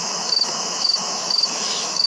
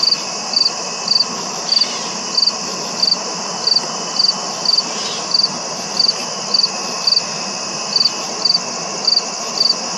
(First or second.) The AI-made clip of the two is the first